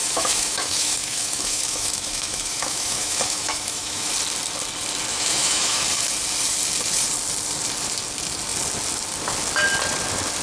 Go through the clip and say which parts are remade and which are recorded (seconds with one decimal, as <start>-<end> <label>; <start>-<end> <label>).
0.0-4.1 remade; 4.1-5.1 recorded; 5.1-5.9 remade; 5.9-10.4 recorded